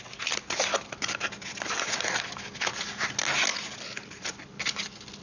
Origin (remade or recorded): recorded